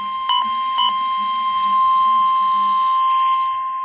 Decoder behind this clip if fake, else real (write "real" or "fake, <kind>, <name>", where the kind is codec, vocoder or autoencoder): real